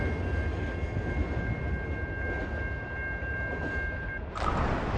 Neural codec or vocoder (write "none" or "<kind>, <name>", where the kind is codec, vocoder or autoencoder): none